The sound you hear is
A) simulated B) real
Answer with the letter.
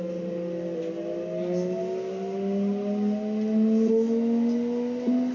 B